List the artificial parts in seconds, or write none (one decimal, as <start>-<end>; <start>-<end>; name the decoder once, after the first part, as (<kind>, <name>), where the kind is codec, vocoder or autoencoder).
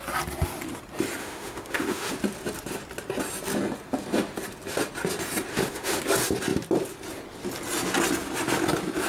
1.2-2.1 (autoencoder, DAC-VAE); 5.5-6.0